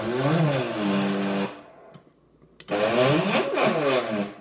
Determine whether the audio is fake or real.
real